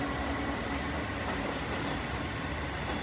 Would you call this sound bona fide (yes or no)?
yes